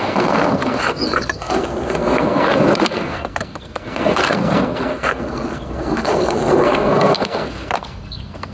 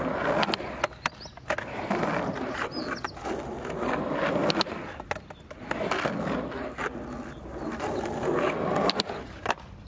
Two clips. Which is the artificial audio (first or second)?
first